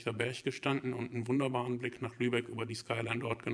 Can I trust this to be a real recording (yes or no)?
no